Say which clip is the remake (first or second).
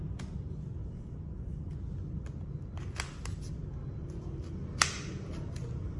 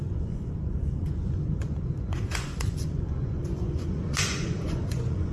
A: second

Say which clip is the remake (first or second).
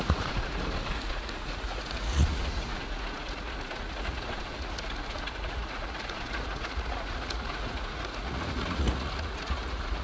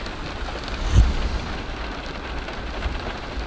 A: first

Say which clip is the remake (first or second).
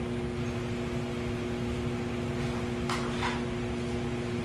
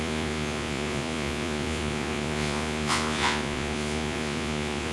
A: second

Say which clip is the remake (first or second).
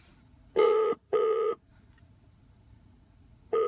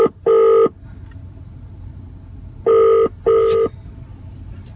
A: first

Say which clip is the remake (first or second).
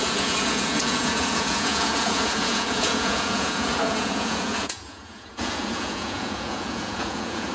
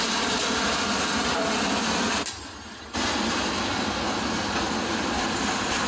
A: first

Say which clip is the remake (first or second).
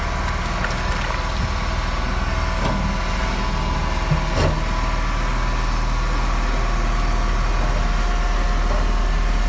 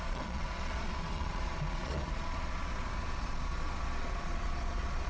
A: second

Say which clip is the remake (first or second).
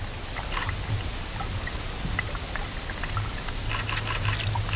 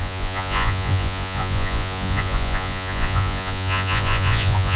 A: second